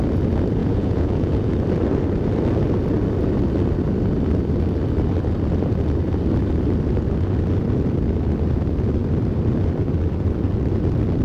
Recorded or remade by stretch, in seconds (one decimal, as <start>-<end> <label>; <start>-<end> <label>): 0.0-0.6 recorded; 0.6-1.5 remade; 1.5-11.2 recorded

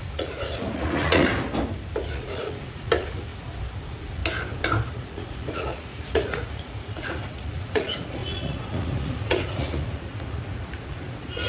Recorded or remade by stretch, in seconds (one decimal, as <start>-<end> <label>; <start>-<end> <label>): 0.0-1.3 remade; 1.3-2.0 recorded; 2.0-3.3 remade; 3.3-3.8 recorded; 3.8-4.2 remade; 4.2-4.9 recorded; 4.9-11.5 remade

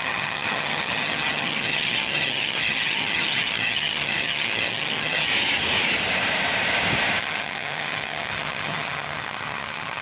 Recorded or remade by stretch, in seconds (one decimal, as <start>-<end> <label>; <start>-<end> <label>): 0.0-5.3 remade; 5.3-7.2 recorded; 7.2-10.0 remade